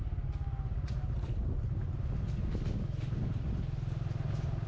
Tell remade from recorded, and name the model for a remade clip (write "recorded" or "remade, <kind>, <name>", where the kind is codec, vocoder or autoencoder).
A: recorded